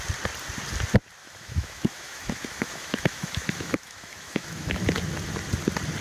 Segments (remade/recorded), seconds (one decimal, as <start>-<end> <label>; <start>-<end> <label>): 0.0-1.2 recorded; 1.2-4.8 remade; 4.8-6.0 recorded